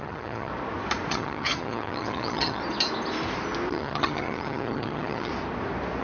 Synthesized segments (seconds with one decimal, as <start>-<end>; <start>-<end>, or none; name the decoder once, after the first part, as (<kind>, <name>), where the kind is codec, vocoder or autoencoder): 0.0-0.5 (vocoder, HiFi-GAN); 1.1-2.6; 3.7-5.3